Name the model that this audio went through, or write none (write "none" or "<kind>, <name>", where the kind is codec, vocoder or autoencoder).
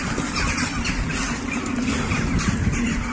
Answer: none